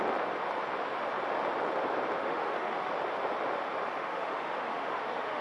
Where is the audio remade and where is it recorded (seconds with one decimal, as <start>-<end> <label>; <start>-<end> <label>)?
0.0-2.2 recorded; 2.2-2.9 remade; 2.9-4.0 recorded; 4.0-5.4 remade